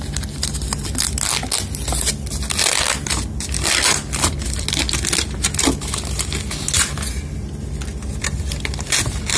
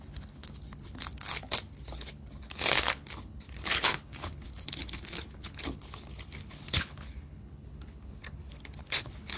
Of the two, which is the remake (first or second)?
second